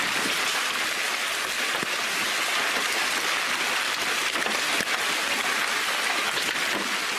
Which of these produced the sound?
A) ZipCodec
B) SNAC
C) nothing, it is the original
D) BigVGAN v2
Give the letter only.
C